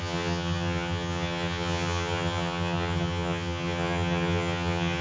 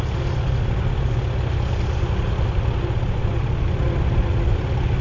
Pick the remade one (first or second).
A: first